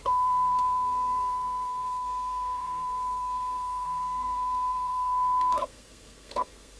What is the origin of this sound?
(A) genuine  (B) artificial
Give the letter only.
B